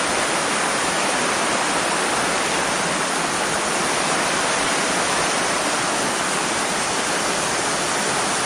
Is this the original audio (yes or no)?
yes